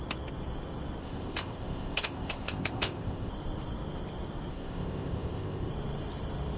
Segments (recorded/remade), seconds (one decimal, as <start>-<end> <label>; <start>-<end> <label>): 0.0-1.0 recorded; 1.0-3.3 remade; 3.3-4.5 recorded; 4.5-5.7 remade; 5.7-6.6 recorded